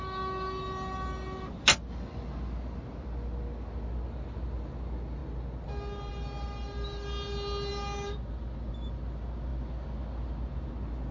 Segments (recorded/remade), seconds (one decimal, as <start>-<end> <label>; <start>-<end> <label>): 0.0-11.1 recorded